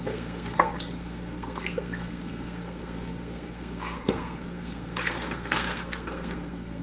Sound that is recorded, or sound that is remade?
remade